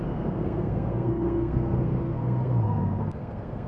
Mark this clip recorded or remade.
remade